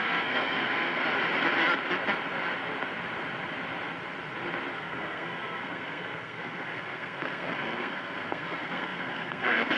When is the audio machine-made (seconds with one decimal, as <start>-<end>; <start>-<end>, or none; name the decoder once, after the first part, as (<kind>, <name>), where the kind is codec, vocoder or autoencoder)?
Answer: 0.0-1.0 (codec, SNAC); 4.7-9.8